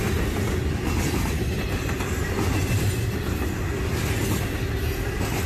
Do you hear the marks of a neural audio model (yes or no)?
no